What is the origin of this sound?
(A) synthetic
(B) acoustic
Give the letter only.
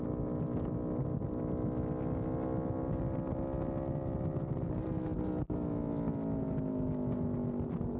B